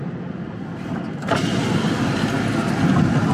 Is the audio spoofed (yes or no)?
no